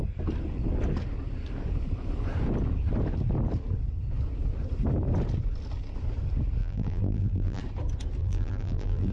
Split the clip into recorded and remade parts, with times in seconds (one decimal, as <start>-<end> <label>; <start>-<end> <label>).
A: 0.0-6.6 recorded; 6.6-7.6 remade; 7.6-8.2 recorded; 8.2-9.1 remade